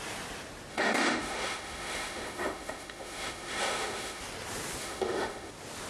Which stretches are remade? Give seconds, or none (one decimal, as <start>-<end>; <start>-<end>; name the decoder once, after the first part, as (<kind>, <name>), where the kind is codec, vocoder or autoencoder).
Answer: 0.7-4.2 (autoencoder, DAC-VAE); 4.8-5.5